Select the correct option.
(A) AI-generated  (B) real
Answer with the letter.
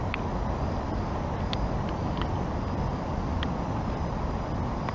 B